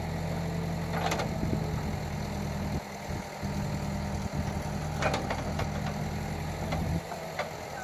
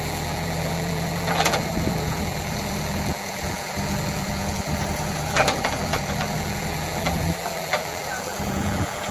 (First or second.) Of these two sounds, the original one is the first